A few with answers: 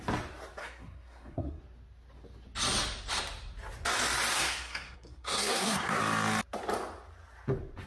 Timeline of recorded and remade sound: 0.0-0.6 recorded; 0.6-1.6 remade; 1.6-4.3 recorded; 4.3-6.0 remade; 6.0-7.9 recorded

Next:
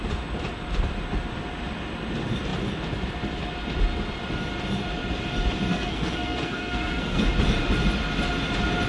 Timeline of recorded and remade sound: 0.0-5.7 recorded; 5.7-7.2 remade; 7.2-8.9 recorded

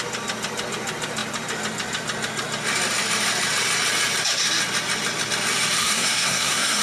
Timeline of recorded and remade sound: 0.0-5.8 recorded; 5.8-6.8 remade

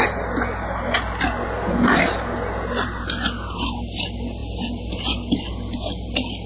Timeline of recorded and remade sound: 0.0-6.5 recorded

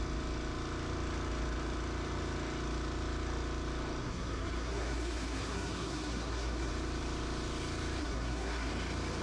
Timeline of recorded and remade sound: 0.0-4.0 recorded; 4.0-6.7 remade; 6.7-8.0 recorded; 8.0-8.7 remade; 8.7-9.2 recorded

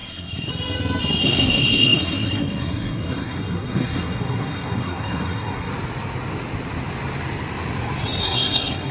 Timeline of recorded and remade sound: 0.0-0.5 remade; 0.5-1.2 recorded; 1.2-5.7 remade; 5.7-8.2 recorded; 8.2-8.9 remade

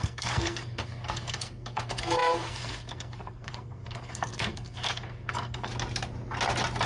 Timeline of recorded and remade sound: 0.0-5.7 remade; 5.7-6.9 recorded